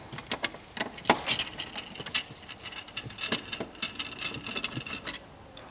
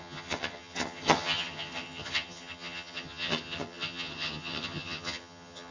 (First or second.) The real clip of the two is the first